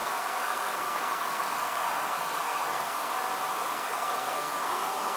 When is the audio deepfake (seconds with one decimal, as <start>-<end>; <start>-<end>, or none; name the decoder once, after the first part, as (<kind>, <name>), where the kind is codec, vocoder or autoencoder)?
0.0-3.1 (codec, SNAC); 3.5-5.2